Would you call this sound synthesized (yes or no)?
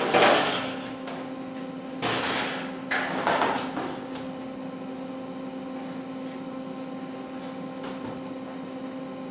no